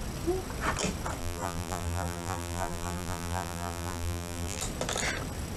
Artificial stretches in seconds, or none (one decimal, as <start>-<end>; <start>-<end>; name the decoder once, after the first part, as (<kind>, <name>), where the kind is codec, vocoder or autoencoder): 1.2-4.6 (vocoder, BigVGAN v2)